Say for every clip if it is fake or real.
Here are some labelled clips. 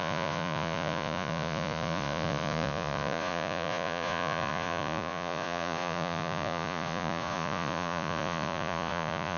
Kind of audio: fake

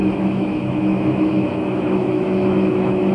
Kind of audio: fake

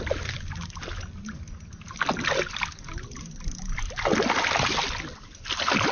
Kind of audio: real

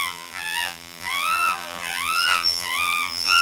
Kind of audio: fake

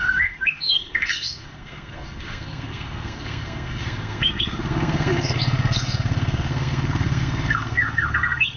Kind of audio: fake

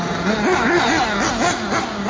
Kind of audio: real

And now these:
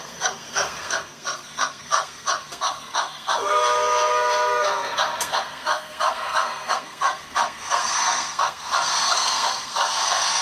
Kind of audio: fake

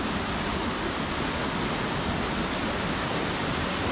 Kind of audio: real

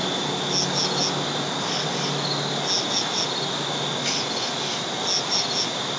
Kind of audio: real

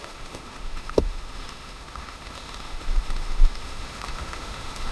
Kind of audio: fake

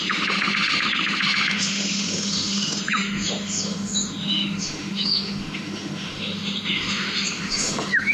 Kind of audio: fake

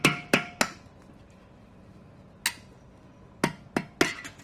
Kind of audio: real